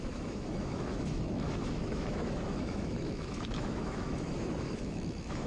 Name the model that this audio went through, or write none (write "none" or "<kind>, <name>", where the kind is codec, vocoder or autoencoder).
autoencoder, DAC-VAE